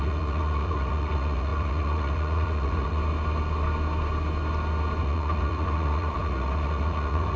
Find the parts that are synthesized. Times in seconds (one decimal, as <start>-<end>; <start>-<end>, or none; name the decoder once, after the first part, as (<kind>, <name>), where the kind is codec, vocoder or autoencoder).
0.0-3.0 (vocoder, Vocos); 5.0-7.4